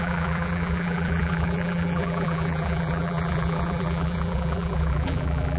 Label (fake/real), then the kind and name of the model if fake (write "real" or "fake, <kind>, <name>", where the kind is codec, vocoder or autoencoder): fake, vocoder, BigVGAN v2